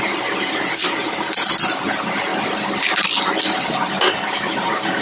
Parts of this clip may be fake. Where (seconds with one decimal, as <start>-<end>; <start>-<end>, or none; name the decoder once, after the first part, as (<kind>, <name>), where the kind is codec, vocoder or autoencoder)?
none